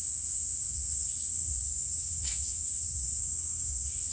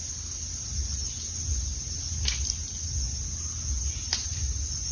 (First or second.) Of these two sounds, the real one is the second